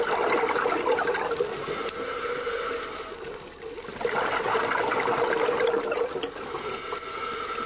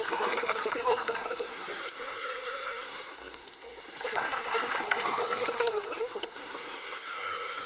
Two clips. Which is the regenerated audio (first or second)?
second